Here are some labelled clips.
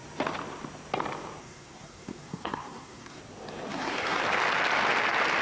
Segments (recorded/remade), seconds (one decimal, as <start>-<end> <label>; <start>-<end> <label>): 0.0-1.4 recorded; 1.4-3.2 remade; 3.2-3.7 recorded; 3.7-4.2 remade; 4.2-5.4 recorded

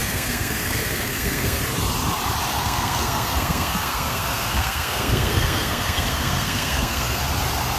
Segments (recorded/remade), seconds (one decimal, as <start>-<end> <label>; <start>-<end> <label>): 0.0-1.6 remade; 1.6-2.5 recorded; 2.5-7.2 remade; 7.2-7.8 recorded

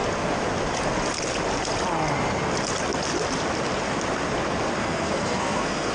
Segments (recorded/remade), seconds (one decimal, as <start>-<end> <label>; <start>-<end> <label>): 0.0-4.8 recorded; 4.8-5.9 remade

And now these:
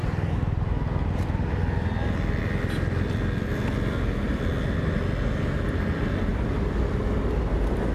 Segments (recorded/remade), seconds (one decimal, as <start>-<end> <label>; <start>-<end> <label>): 0.0-7.9 recorded

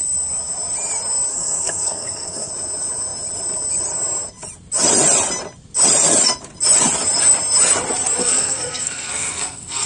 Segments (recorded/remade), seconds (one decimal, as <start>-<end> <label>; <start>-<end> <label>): 0.0-1.3 recorded; 1.3-2.5 remade; 2.5-8.2 recorded; 8.2-9.9 remade